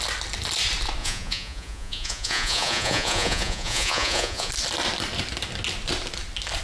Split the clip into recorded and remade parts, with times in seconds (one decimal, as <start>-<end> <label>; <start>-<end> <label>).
0.0-1.0 recorded; 1.0-4.5 remade; 4.5-6.6 recorded